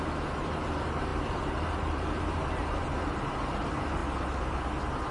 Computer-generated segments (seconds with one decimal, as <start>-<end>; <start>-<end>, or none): 0.0-4.0